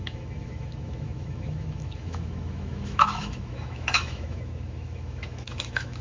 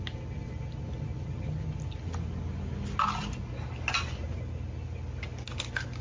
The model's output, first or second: first